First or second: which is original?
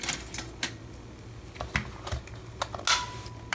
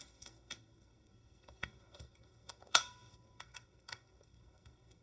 first